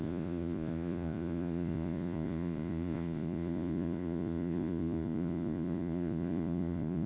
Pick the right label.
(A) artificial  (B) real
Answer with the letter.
A